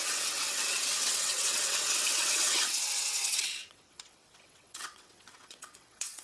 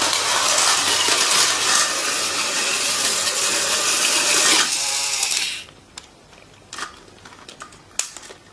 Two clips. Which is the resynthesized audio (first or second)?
first